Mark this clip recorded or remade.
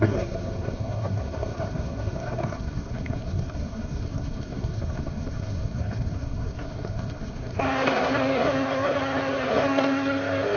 remade